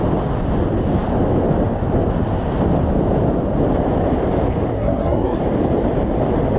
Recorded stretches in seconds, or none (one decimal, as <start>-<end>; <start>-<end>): 0.0-4.7; 5.4-6.6